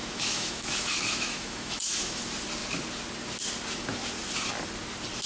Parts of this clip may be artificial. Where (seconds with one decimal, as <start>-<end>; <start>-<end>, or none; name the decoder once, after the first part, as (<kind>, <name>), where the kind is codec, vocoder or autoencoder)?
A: 0.0-2.2 (autoencoder, DAC-VAE)